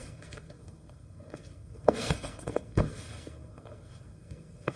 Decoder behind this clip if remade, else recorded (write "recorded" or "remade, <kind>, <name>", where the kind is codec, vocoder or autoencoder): remade, codec, SNAC